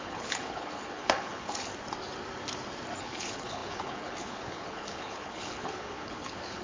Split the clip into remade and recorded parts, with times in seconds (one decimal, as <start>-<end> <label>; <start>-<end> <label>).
0.0-1.7 remade; 1.7-3.0 recorded; 3.0-6.6 remade